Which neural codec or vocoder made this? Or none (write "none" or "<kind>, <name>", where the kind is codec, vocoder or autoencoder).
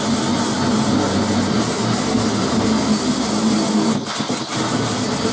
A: none